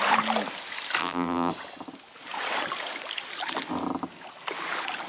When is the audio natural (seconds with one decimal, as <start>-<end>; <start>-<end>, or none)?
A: 0.0-1.0; 1.5-5.1